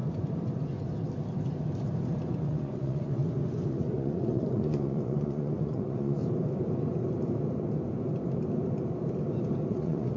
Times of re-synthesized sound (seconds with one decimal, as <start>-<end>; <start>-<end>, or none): 2.4-3.2; 3.7-6.2; 9.7-10.2